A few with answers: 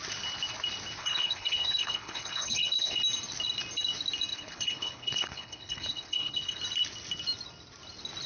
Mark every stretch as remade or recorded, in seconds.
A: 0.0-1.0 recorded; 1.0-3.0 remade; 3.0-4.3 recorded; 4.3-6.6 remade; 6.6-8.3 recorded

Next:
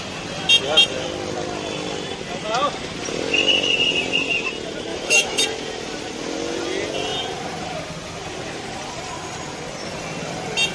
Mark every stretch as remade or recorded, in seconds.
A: 0.0-4.9 recorded; 4.9-5.4 remade; 5.4-10.7 recorded